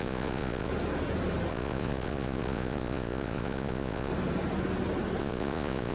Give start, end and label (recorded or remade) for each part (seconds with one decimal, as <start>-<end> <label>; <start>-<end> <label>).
0.0-0.7 remade; 0.7-1.5 recorded; 1.5-4.1 remade; 4.1-5.2 recorded; 5.2-5.9 remade